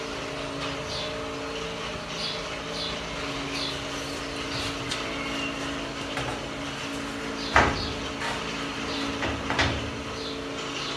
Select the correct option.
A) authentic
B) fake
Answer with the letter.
A